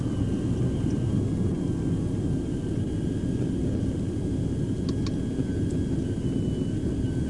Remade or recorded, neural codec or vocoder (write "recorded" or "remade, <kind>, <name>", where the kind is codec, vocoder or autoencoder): recorded